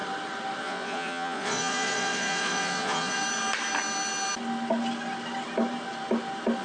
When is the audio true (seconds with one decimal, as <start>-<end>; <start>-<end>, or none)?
0.0-0.6; 3.2-6.6